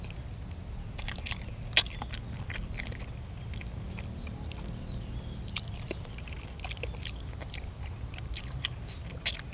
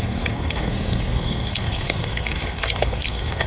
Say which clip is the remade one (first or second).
second